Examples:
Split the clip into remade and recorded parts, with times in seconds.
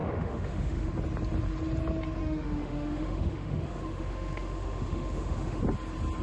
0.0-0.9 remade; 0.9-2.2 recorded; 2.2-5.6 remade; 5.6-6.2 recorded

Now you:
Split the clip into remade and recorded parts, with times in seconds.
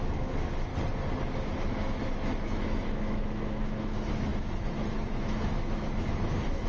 0.0-0.7 remade; 0.7-1.2 recorded; 1.2-6.7 remade